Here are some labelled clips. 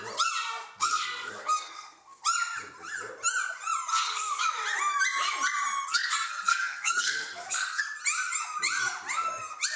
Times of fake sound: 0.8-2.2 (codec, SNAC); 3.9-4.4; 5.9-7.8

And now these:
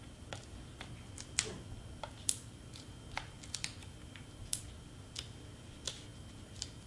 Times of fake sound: 2.2-2.9 (vocoder, BigVGAN v2); 3.8-4.6; 6.1-6.9

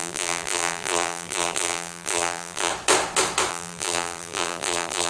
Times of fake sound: 0.0-2.7 (vocoder, BigVGAN v2); 3.5-5.1

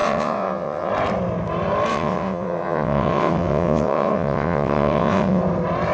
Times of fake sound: 0.0-0.9 (vocoder, WaveNeXt); 1.9-5.4

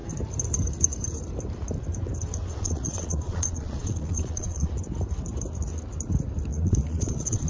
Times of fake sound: 2.5-4.7 (vocoder, Vocos); 6.5-7.5

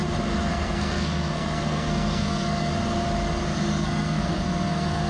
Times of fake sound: 0.5-2.7 (codec, SNAC); 3.7-5.1